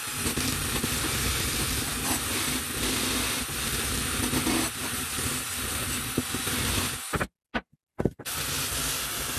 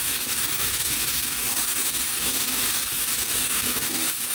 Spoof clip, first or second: second